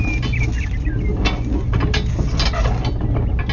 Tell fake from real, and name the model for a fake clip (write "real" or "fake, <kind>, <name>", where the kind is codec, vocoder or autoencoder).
real